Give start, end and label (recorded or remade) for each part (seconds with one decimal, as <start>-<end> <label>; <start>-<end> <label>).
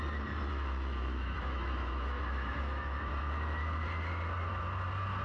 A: 0.0-0.5 recorded; 0.5-3.2 remade; 3.2-5.2 recorded